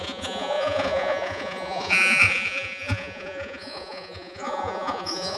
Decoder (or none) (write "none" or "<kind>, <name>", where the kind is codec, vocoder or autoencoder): vocoder, Vocos